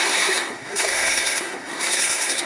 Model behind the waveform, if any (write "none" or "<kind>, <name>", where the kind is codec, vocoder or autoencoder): codec, SNAC